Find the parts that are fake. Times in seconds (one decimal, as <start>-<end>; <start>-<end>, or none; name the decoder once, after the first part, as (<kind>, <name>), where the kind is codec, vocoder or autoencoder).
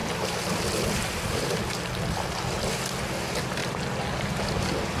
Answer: none